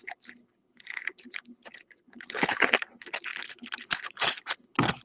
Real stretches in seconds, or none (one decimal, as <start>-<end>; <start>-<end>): none